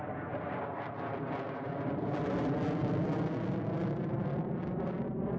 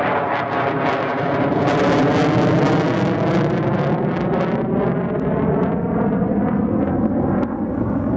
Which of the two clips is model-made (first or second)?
first